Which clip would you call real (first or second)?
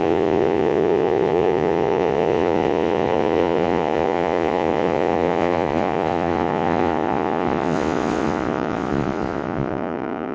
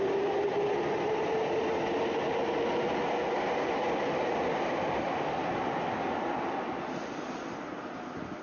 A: second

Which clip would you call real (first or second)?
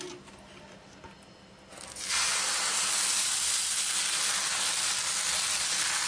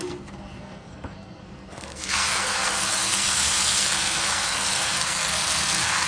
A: first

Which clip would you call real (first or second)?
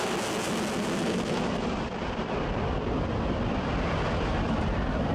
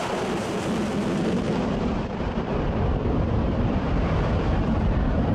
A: first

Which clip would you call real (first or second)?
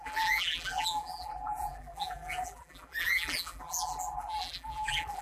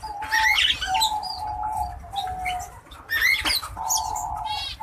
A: second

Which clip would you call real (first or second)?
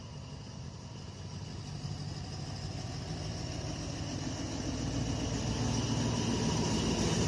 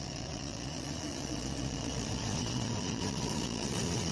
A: first